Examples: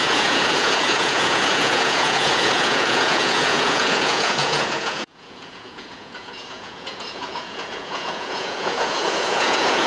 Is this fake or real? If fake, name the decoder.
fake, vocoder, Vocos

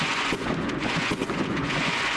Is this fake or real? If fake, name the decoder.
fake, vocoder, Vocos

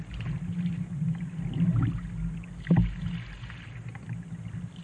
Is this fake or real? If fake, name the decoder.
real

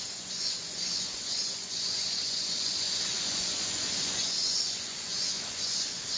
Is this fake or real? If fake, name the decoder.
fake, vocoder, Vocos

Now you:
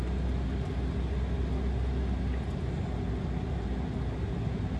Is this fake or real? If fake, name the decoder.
real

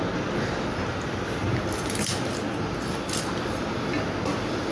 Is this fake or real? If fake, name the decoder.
real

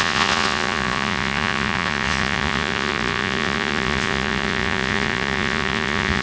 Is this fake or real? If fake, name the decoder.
fake, vocoder, Vocos